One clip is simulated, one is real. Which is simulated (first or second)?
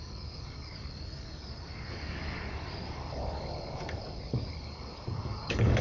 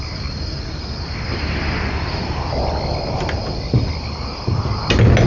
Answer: first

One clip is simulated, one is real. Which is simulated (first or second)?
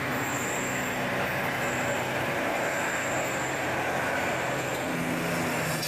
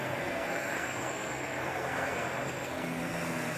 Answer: second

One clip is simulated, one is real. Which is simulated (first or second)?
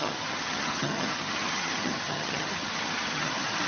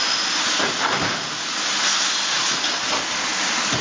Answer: first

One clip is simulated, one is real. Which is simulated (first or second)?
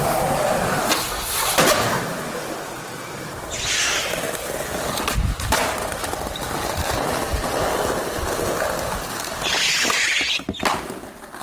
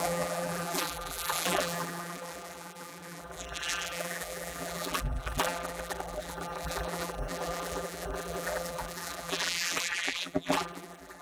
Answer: second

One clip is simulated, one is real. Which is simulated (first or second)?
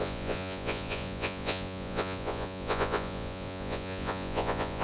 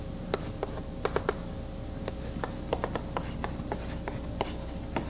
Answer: first